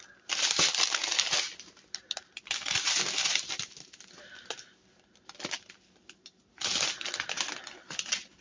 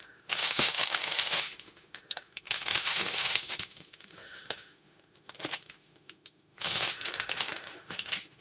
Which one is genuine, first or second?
first